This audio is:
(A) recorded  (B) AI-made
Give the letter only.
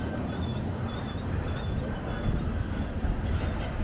A